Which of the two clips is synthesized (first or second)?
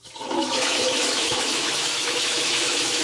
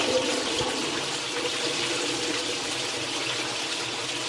first